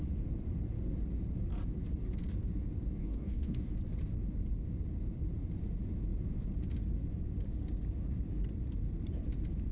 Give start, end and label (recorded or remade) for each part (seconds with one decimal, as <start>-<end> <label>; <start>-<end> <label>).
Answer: 0.0-3.0 recorded; 3.0-3.7 remade; 3.7-9.7 recorded